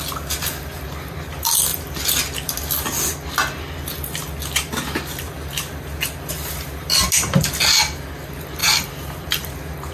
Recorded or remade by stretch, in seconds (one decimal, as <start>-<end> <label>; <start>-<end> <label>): 0.0-8.6 recorded; 8.6-9.5 remade; 9.5-9.9 recorded